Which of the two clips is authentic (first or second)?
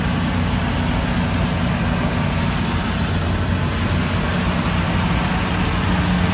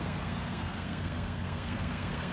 first